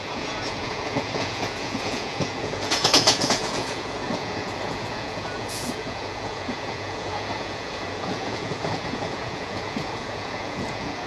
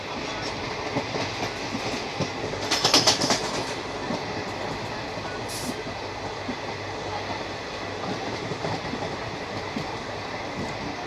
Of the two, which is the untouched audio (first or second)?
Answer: second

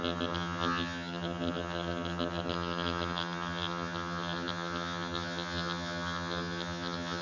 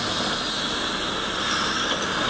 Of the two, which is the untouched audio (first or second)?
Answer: second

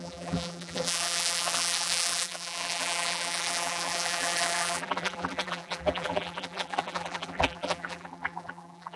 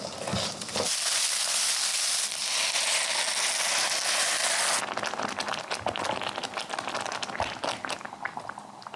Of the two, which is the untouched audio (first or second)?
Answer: second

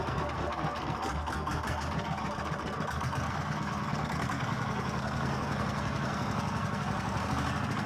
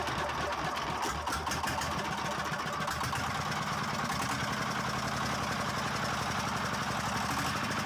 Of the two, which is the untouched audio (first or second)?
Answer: second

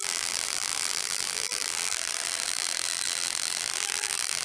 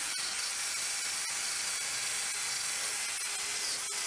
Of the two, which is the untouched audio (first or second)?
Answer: second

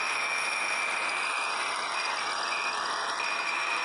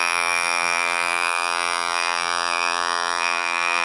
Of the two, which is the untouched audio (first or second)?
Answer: first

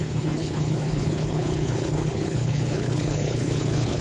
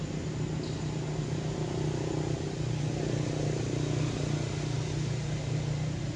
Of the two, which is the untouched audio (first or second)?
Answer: second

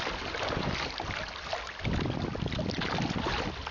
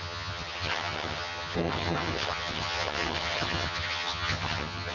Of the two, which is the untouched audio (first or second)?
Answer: first